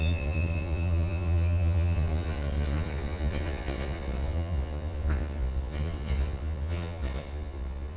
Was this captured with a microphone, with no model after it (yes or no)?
no